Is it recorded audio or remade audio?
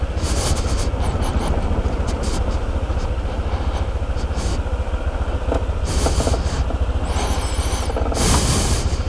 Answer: recorded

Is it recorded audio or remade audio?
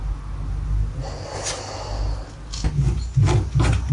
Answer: recorded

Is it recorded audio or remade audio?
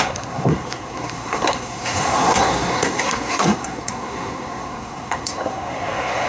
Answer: remade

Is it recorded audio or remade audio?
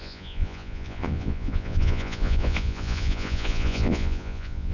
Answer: remade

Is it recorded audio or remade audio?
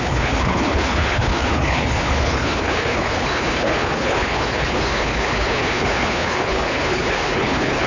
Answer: remade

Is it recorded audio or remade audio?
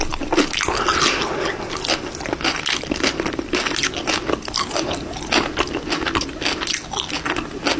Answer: recorded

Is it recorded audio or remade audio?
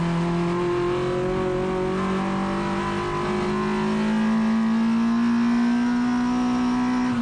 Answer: recorded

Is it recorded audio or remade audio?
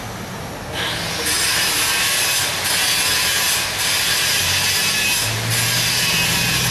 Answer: recorded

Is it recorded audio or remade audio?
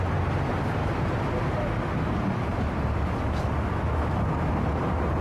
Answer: recorded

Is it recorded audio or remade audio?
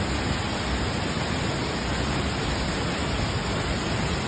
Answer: recorded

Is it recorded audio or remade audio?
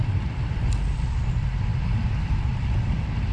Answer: recorded